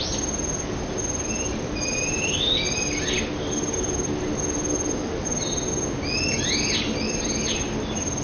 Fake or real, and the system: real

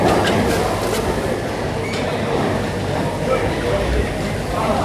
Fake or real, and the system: real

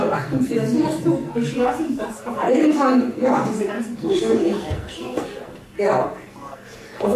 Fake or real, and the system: fake, codec, SNAC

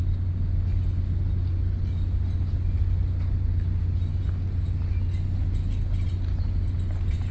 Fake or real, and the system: real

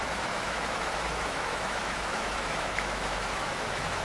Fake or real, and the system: fake, autoencoder, DAC-VAE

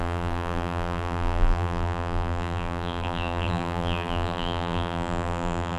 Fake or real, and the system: fake, vocoder, BigVGAN v2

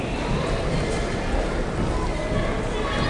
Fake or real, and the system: real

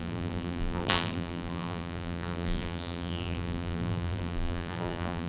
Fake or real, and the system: fake, vocoder, BigVGAN v2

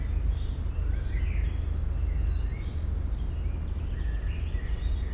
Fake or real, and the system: real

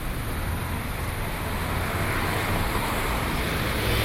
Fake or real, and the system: real